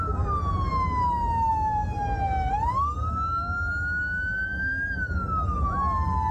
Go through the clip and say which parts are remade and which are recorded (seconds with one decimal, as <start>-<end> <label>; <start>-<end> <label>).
0.0-1.5 recorded; 1.5-2.0 remade; 2.0-6.3 recorded